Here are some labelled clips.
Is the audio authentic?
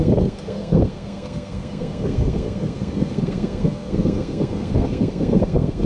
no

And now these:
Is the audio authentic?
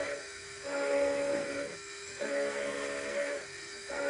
no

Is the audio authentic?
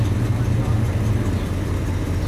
yes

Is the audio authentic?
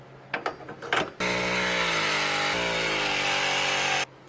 yes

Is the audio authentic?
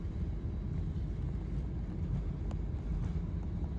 yes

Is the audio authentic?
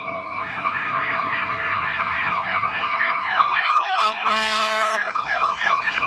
no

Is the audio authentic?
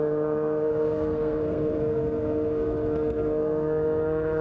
no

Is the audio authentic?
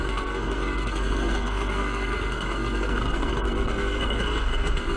no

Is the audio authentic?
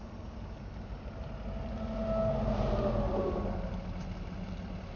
yes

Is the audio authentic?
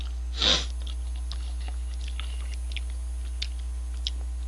yes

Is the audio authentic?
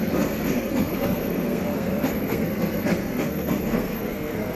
no